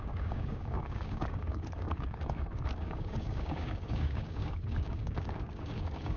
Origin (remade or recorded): remade